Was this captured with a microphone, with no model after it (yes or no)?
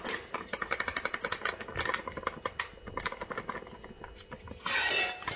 yes